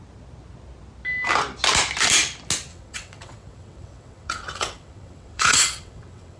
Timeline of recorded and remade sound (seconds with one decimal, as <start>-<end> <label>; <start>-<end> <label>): 0.0-2.7 recorded; 2.7-6.4 remade